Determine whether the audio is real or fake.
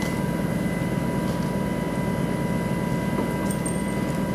real